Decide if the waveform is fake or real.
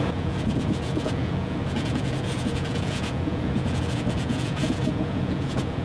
fake